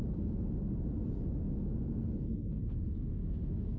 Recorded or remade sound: recorded